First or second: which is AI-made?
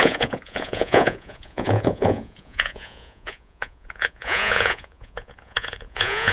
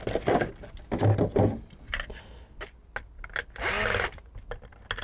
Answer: first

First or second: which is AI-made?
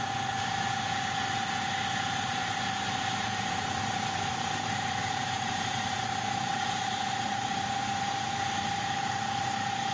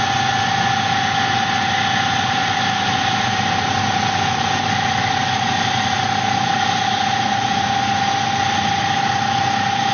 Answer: first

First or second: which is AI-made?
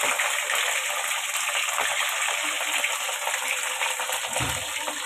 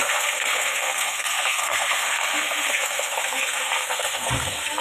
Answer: second